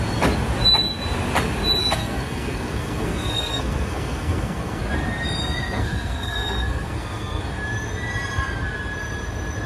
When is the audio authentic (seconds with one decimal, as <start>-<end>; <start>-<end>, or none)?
0.0-1.8; 4.8-5.4; 7.4-9.7